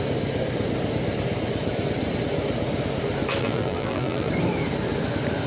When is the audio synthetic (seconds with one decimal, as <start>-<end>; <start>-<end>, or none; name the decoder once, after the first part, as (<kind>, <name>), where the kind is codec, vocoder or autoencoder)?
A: 3.4-4.3 (vocoder, BigVGAN v2)